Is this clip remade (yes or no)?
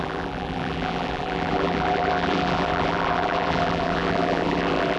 yes